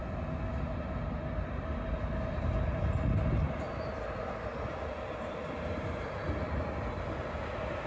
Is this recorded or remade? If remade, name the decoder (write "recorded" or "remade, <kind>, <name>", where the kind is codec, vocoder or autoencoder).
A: recorded